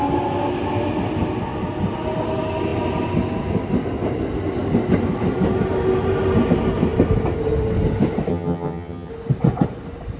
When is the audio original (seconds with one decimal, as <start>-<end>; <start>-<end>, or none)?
0.0-8.3; 9.1-10.2